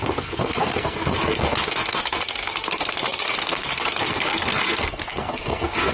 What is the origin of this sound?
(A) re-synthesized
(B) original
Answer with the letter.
A